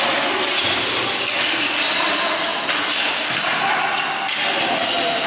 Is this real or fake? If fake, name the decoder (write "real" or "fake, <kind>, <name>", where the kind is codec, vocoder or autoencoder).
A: real